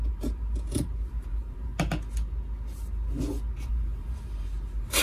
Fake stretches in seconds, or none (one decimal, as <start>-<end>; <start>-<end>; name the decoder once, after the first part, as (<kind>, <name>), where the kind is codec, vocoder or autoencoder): 0.0-1.7 (vocoder, BigVGAN v2); 3.7-5.0